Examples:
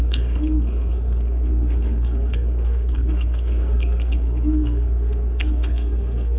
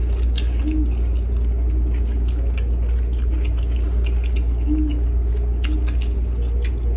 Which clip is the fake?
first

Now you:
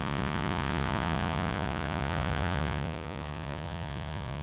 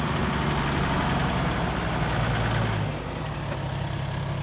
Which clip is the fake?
first